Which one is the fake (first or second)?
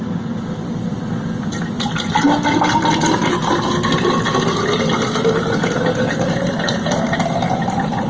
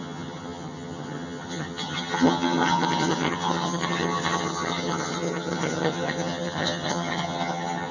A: second